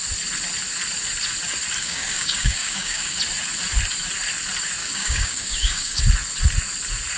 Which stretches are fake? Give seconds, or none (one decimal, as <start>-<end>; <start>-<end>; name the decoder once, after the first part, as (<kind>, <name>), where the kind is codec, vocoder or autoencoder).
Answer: 1.8-3.2 (codec, DAC); 4.8-6.0